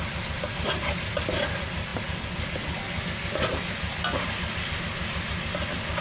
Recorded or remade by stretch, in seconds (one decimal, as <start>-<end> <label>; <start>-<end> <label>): 0.0-6.0 recorded